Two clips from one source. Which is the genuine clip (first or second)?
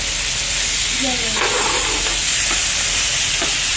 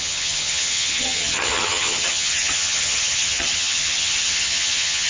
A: first